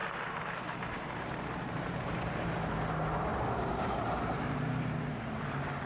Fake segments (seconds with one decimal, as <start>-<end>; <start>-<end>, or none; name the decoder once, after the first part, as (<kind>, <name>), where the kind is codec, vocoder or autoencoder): 0.0-2.6 (vocoder, BigVGAN v2); 3.3-5.2